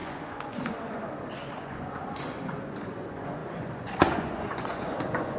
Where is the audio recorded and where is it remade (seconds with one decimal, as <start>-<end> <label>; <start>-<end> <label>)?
0.0-5.4 remade